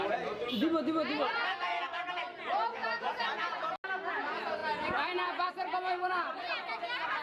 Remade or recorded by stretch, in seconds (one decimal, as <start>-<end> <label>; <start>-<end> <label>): 0.0-2.8 recorded; 2.8-3.7 remade; 3.7-4.6 recorded; 4.6-5.5 remade; 5.5-7.2 recorded